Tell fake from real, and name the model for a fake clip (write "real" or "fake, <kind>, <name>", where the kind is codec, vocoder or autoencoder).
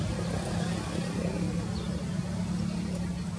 real